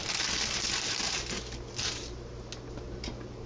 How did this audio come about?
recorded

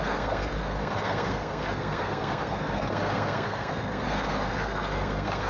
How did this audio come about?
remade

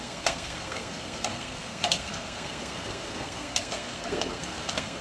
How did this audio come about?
remade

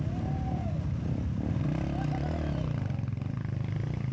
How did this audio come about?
recorded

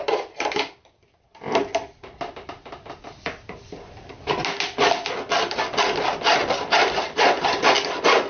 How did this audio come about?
recorded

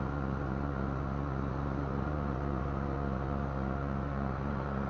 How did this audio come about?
remade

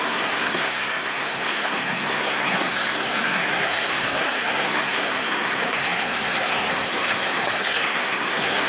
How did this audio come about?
remade